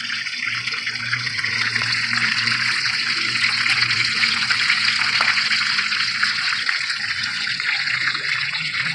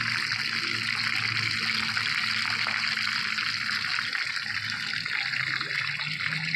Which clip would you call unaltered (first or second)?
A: second